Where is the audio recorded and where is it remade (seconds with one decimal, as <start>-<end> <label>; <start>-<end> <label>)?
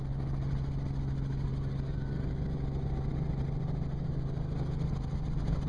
0.0-5.7 recorded